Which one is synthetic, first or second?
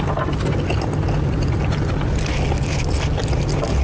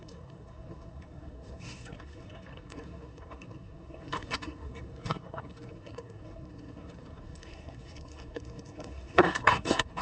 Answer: second